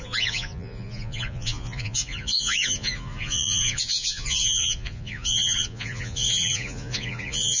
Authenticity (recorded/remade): remade